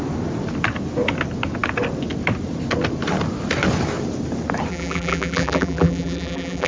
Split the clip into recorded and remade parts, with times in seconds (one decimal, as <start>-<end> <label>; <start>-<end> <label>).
0.0-4.7 recorded; 4.7-6.7 remade